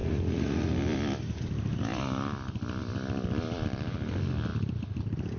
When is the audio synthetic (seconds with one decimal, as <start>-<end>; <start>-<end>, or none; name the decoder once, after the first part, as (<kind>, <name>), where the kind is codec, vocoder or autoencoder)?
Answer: 0.0-0.7 (vocoder, Vocos)